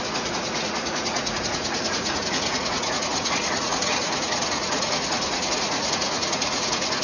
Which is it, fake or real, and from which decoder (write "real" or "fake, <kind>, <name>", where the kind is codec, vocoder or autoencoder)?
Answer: fake, vocoder, Vocos